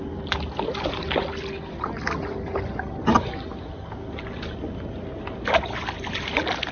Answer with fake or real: real